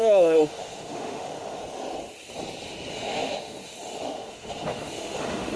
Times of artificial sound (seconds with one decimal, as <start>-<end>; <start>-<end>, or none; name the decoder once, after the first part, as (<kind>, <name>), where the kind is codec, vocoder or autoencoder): 0.0-1.6 (autoencoder, DAC-VAE); 2.9-5.6

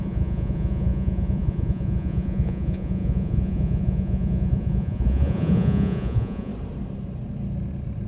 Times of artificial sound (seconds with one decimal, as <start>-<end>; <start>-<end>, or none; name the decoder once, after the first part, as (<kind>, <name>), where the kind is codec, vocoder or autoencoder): 0.0-6.5 (vocoder, Vocos)

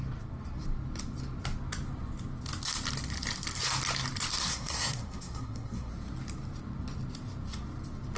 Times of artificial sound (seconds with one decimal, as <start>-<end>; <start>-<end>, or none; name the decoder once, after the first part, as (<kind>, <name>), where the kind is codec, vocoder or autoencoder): 4.3-5.9 (codec, SNAC)

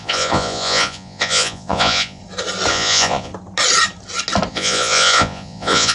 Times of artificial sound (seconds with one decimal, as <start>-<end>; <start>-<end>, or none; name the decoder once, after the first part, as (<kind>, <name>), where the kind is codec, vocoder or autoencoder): 0.0-2.2 (vocoder, Vocos); 2.7-3.3; 4.5-5.9